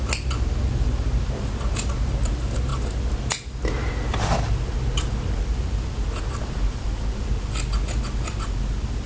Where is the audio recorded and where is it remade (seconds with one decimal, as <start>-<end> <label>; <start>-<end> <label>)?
0.0-9.1 recorded